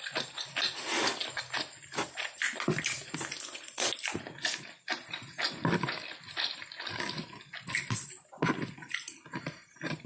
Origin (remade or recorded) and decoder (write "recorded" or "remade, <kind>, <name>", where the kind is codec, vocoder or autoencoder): recorded